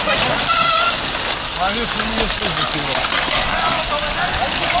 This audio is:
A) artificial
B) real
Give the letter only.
B